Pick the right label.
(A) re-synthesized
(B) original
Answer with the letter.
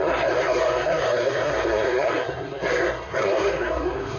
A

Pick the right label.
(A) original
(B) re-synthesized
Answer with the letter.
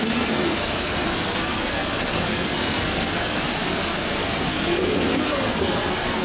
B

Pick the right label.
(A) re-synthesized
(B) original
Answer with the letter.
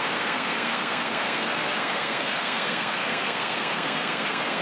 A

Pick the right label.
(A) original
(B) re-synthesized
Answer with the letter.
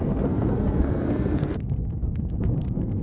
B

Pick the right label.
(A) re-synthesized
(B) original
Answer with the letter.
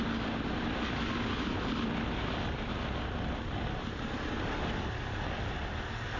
B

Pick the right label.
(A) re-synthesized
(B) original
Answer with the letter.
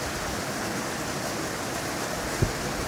B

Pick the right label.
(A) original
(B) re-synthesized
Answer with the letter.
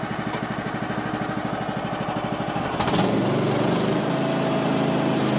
A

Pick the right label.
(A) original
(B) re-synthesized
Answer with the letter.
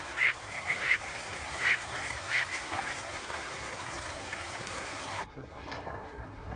B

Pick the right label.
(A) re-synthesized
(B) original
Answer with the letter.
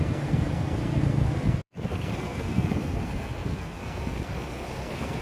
A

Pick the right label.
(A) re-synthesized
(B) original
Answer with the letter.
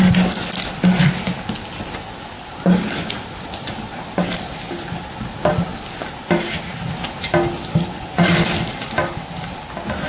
B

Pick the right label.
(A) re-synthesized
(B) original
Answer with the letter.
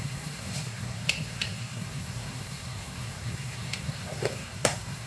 A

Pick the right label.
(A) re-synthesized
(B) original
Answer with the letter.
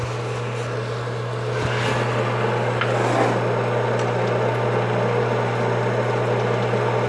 B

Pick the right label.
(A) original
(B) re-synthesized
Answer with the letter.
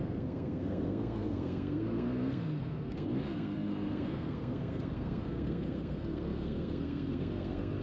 B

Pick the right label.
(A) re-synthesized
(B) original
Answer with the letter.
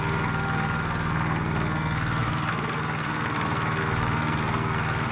A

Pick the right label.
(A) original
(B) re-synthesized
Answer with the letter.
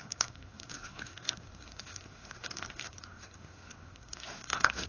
B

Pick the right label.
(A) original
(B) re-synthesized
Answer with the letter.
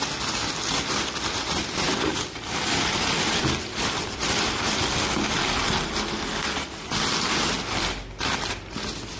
A